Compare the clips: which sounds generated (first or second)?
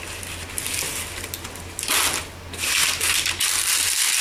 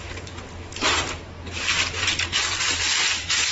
second